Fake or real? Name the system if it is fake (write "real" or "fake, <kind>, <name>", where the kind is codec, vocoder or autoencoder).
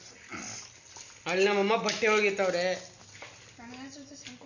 real